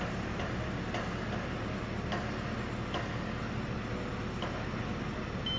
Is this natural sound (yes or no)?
yes